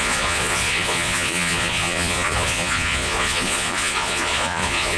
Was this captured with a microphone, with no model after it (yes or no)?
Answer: no